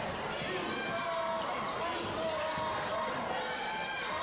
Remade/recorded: recorded